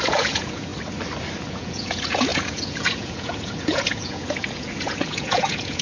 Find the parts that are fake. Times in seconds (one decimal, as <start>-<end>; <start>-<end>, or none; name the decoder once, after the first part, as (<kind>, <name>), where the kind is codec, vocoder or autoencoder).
0.0-0.7 (vocoder, Vocos); 1.5-5.8